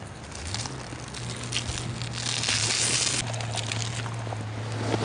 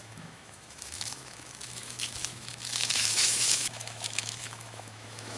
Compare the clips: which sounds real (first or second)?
first